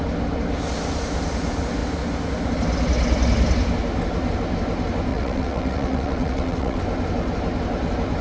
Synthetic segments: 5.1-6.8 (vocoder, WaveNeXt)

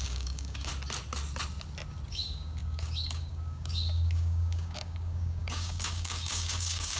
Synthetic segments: 0.0-0.7 (codec, DAC); 2.1-7.0

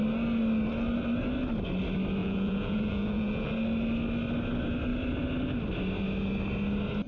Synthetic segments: 2.2-3.5 (vocoder, Vocos)